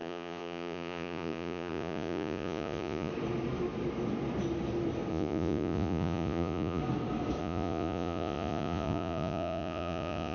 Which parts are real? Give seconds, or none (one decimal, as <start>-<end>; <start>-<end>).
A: 3.1-5.1; 6.8-7.4